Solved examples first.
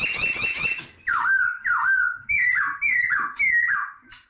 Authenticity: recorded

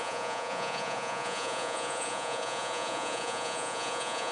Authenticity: remade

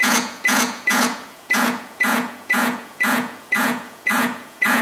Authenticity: remade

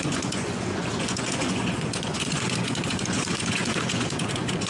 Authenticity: remade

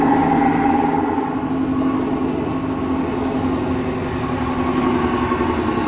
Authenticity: recorded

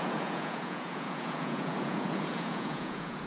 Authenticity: remade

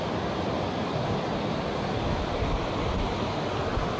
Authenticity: recorded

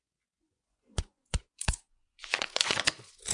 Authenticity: remade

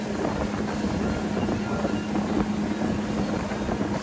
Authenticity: recorded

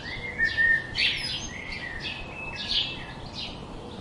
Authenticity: recorded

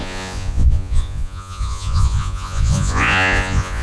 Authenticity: remade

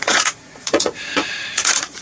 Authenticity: remade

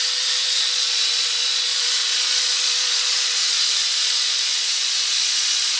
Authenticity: remade